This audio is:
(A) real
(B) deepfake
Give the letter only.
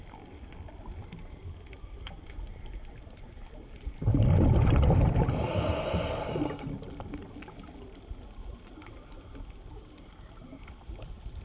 A